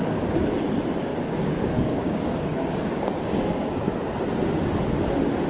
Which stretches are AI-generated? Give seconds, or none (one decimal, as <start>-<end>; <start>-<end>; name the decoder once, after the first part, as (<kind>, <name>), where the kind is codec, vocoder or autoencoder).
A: 1.1-3.7 (codec, DAC)